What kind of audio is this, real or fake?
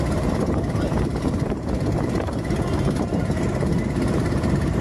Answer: fake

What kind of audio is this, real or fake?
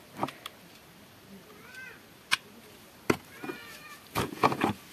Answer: real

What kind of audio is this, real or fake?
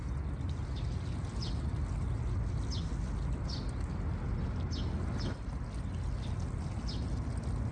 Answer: real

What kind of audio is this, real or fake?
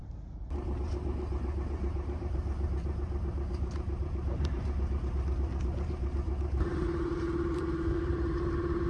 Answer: fake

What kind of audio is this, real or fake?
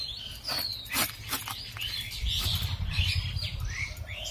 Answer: real